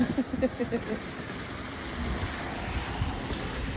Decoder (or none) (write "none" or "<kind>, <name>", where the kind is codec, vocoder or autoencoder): vocoder, BigVGAN v2